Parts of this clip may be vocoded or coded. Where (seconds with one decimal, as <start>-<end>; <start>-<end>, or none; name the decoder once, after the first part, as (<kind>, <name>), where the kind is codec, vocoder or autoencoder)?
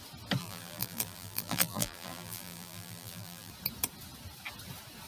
0.4-3.5 (vocoder, BigVGAN v2)